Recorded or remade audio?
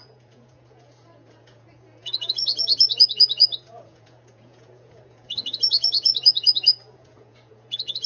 remade